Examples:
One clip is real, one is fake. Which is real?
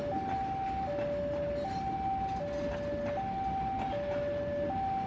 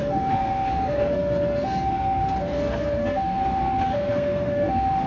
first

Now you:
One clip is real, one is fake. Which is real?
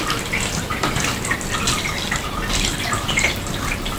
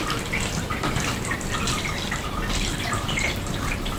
first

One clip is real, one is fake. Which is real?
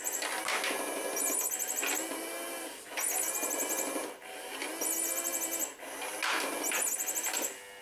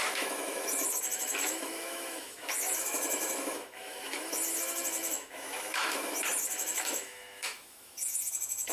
first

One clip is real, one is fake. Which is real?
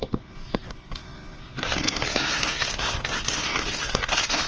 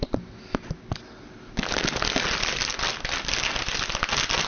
second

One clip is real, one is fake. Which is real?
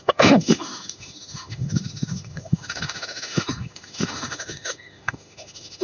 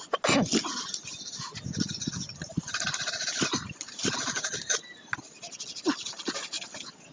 second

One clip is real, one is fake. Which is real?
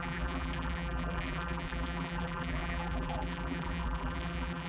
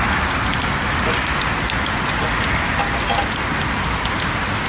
second